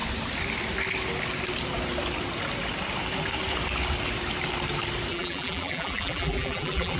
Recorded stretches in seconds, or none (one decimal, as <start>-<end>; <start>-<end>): 0.0-5.1